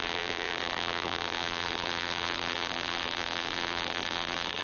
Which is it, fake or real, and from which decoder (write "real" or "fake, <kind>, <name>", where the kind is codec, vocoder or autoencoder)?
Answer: fake, vocoder, BigVGAN v2